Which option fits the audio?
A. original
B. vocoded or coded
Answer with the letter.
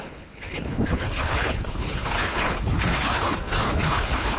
B